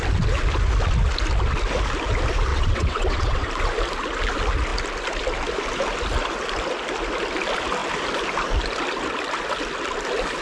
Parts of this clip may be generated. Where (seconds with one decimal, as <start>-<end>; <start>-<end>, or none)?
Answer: 2.5-3.5